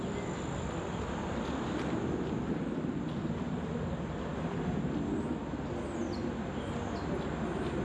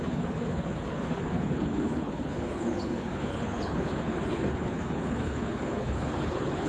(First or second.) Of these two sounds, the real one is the first